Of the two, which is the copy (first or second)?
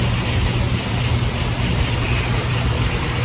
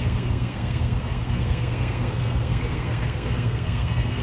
second